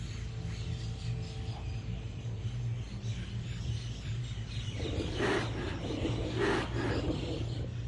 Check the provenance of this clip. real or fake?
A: real